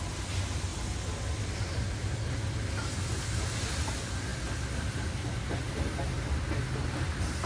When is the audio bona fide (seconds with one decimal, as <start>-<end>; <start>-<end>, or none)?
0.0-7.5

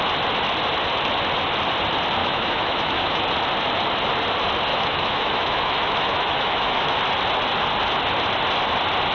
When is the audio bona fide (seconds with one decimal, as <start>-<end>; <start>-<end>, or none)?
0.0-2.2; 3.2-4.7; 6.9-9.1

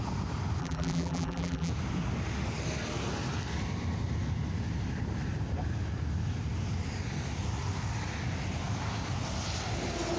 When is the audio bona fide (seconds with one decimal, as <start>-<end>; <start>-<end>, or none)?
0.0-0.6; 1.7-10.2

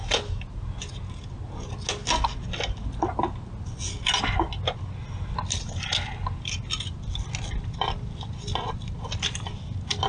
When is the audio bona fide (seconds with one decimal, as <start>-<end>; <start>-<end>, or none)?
0.0-10.1

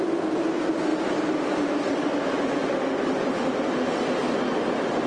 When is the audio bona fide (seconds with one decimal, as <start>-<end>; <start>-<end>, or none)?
0.0-5.1

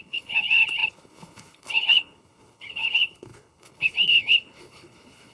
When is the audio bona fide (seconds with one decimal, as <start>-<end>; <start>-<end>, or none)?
none